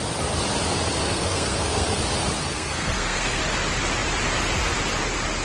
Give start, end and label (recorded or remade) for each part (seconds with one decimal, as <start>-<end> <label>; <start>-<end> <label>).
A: 0.0-1.0 recorded; 1.0-2.0 remade; 2.0-2.4 recorded; 2.4-3.4 remade; 3.4-5.4 recorded